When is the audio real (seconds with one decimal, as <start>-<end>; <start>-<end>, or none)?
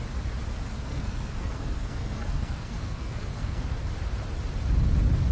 0.0-0.7; 3.9-5.3